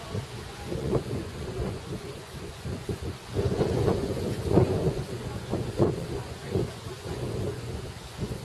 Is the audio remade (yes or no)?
yes